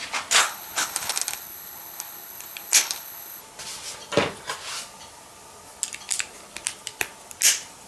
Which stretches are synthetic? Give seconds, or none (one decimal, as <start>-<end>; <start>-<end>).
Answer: 0.4-3.4